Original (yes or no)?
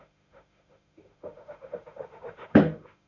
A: no